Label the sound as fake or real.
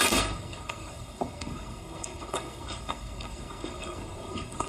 fake